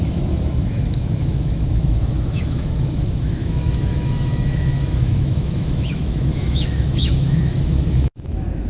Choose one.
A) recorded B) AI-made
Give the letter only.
B